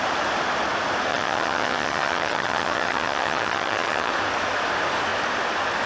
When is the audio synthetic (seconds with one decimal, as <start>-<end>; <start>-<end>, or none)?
1.1-4.1